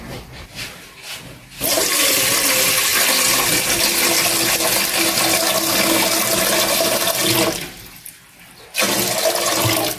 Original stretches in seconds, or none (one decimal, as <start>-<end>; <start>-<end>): 0.0-10.0